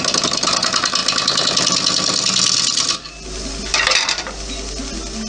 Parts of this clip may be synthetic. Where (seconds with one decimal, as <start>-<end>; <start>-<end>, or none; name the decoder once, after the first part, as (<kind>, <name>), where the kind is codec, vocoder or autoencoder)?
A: none